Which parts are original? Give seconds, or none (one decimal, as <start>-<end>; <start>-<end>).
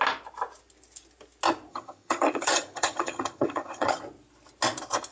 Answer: 0.0-1.7; 4.0-5.1